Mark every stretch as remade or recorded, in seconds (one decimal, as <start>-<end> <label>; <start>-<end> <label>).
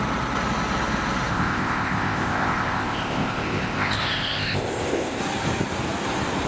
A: 0.0-1.3 recorded; 1.3-5.2 remade; 5.2-6.5 recorded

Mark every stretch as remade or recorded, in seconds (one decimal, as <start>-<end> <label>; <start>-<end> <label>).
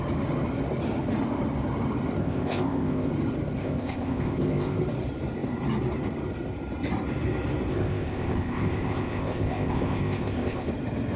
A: 0.0-2.2 recorded; 2.2-3.1 remade; 3.1-3.6 recorded; 3.6-4.8 remade; 4.8-7.7 recorded; 7.7-10.7 remade; 10.7-11.2 recorded